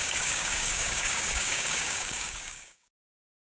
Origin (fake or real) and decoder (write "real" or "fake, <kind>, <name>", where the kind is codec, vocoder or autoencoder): fake, codec, DAC